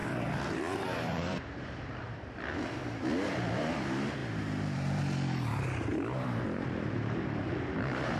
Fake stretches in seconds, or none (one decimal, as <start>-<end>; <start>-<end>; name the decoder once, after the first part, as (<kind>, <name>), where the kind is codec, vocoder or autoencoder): 0.0-2.3 (vocoder, BigVGAN v2); 4.2-5.0; 5.9-7.2